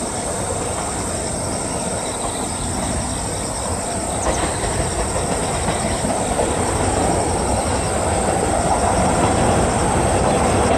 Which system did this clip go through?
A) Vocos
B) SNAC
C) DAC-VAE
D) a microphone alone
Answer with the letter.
D